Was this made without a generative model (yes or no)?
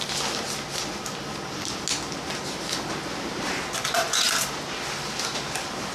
yes